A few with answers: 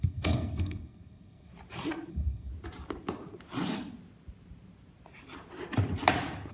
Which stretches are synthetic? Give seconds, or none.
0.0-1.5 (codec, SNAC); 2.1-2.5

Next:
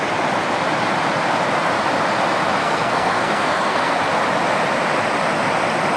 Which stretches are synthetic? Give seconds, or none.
2.6-4.0 (codec, SNAC)

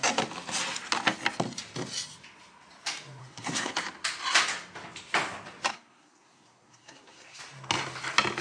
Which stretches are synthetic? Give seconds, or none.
3.2-3.7 (codec, SNAC); 5.7-7.4

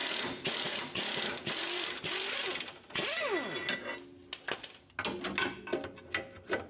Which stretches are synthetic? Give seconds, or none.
none

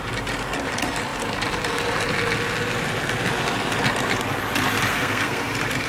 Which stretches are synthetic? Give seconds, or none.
4.9-5.5 (codec, SNAC)

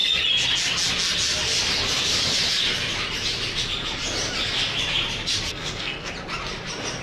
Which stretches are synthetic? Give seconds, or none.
5.5-6.1 (codec, SNAC)

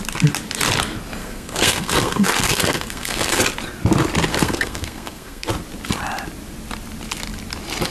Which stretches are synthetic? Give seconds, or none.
1.2-3.4 (codec, SNAC); 4.3-5.5